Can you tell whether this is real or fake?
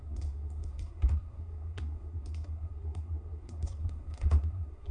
fake